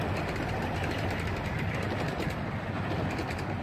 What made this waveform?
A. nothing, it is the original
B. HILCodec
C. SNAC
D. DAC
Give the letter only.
A